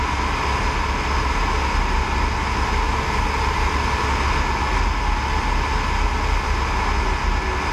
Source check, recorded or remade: recorded